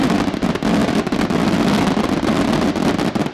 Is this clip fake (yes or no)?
no